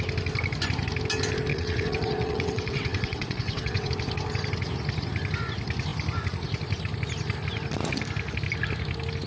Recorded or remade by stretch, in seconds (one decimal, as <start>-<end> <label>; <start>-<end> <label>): 0.0-1.5 recorded; 1.5-3.9 remade; 3.9-9.3 recorded